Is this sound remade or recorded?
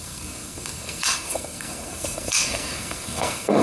remade